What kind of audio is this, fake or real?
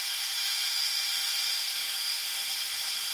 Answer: fake